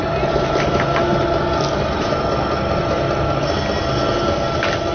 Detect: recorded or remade recorded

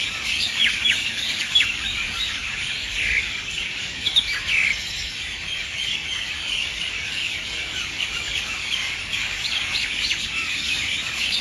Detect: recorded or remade remade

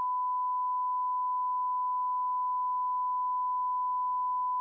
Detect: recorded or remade recorded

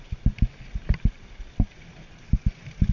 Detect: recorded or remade recorded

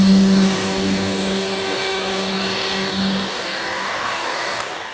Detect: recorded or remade remade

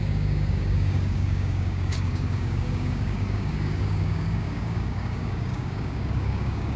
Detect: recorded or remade remade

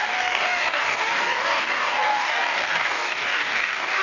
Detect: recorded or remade remade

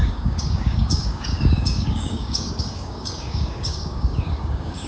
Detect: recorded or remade remade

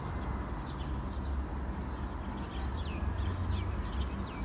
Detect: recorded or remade recorded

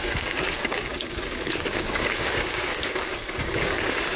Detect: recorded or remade remade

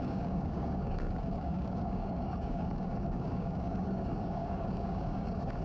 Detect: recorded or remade remade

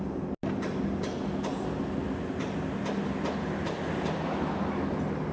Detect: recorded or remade recorded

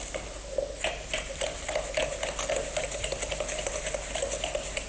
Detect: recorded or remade recorded